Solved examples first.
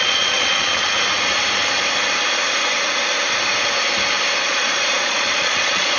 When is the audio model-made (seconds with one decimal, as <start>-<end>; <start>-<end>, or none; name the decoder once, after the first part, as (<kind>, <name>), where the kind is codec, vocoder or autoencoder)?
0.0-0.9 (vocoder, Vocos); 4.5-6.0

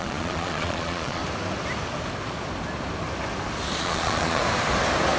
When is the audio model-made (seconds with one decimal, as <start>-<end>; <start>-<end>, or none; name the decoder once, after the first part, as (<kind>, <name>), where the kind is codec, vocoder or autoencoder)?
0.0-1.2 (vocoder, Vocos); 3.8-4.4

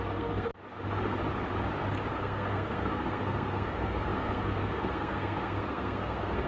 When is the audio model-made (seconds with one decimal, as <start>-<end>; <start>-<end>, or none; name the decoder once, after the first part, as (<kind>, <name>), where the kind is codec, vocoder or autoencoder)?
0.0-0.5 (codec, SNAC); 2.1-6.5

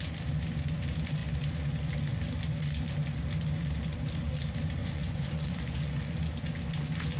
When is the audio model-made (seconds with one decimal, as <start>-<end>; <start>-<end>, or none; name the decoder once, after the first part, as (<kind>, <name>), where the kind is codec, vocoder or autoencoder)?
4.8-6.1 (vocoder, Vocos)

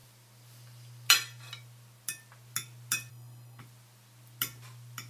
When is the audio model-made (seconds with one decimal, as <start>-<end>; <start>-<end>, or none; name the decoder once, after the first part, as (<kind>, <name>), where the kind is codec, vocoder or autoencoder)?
3.1-3.6 (codec, SNAC)

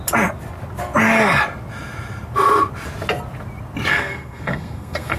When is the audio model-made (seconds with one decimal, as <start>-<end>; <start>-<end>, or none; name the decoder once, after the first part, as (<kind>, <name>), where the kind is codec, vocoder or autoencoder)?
3.9-5.2 (codec, SNAC)

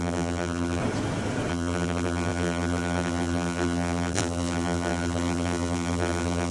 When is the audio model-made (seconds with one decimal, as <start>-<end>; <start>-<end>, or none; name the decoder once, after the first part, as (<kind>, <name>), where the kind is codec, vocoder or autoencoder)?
0.0-0.8 (vocoder, BigVGAN v2); 1.5-6.5

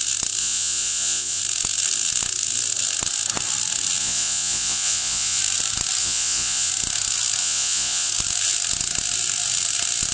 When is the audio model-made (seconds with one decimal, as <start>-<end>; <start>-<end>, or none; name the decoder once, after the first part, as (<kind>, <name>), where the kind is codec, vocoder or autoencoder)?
0.4-1.4 (vocoder, Vocos); 4.0-5.4; 6.0-6.7; 7.4-8.1